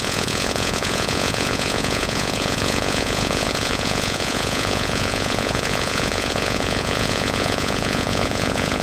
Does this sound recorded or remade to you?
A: remade